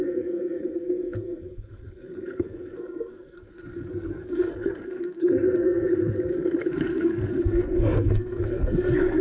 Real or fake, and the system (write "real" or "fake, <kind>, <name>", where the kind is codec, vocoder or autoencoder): fake, codec, SNAC